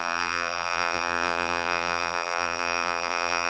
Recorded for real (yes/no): no